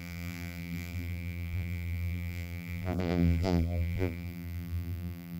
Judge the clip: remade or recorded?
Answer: remade